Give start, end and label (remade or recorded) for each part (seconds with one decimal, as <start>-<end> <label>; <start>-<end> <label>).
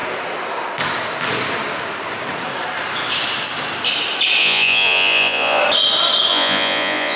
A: 0.0-4.4 recorded; 4.4-5.6 remade; 5.6-6.3 recorded; 6.3-7.2 remade